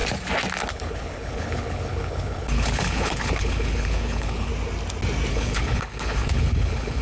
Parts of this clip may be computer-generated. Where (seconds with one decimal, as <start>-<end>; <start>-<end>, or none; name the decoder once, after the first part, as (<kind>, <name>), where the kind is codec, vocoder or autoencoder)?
0.7-4.5 (codec, HILCodec); 5.3-7.0